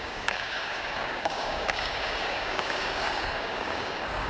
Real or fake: fake